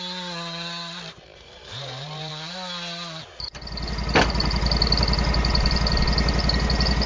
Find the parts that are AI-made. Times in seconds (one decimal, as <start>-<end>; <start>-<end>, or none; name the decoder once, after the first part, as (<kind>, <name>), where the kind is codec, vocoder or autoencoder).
1.3-2.3 (vocoder, BigVGAN v2)